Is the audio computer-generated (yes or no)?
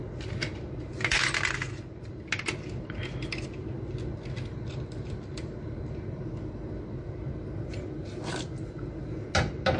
no